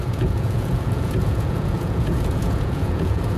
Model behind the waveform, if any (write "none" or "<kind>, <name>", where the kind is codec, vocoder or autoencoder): vocoder, Vocos